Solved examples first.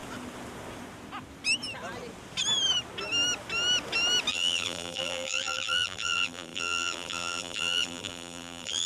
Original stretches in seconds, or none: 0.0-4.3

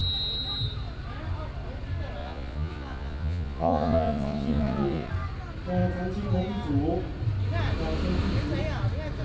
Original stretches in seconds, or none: 0.0-2.2; 5.1-9.2

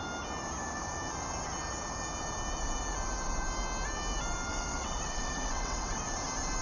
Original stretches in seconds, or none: 0.0-4.5; 6.0-6.6

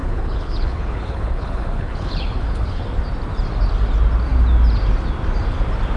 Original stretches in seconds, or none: 2.8-6.0